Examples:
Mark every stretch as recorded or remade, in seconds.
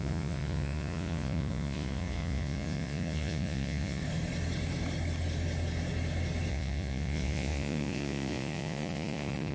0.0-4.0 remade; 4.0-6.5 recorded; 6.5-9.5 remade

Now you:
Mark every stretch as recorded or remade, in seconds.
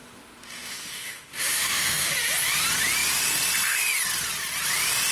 0.0-2.1 remade; 2.1-5.1 recorded